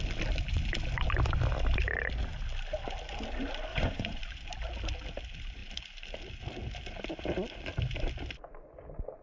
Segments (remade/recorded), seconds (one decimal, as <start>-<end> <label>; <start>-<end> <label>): 0.0-3.7 recorded; 3.7-4.2 remade; 4.2-9.2 recorded